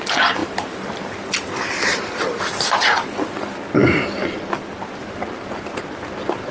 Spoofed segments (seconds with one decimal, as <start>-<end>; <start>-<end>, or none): none